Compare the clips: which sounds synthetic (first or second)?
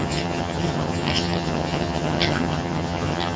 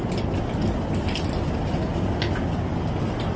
first